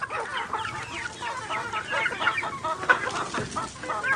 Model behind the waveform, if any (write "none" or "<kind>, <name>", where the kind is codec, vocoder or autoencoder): none